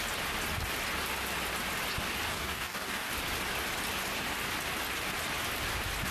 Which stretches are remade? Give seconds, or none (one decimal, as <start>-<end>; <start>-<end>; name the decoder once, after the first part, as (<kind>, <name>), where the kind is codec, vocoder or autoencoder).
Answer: 2.3-3.1 (codec, DAC)